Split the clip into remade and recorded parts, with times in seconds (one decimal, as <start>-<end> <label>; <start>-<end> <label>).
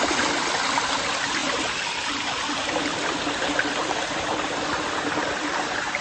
0.0-6.0 recorded